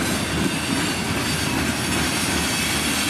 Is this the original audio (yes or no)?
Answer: yes